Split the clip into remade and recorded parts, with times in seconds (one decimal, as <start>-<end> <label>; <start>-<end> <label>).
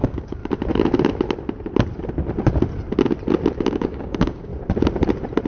0.0-0.4 remade; 0.4-3.7 recorded; 3.7-4.5 remade; 4.5-5.5 recorded